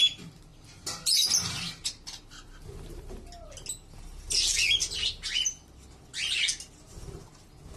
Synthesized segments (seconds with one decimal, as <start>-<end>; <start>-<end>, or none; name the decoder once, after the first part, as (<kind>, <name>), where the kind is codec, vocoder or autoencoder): none